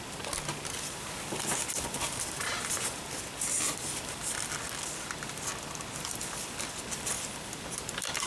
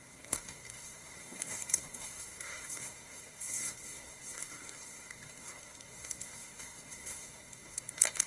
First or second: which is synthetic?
second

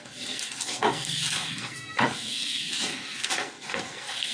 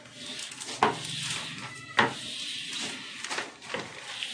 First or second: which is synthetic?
first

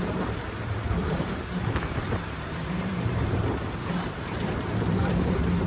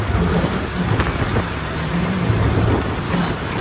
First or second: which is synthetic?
first